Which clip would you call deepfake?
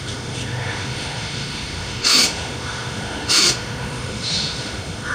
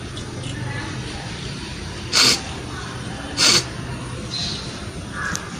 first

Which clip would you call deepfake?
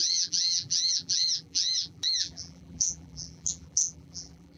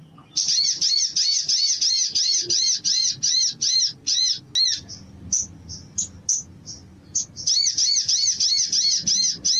first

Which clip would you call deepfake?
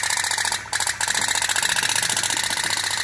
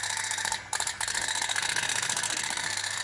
second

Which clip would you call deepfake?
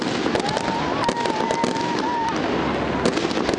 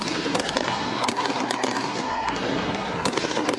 second